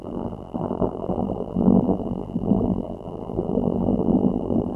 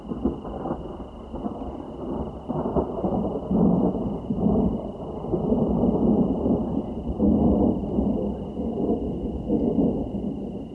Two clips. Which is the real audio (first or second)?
second